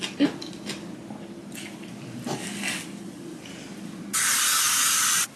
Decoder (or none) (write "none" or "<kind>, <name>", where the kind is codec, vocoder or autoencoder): none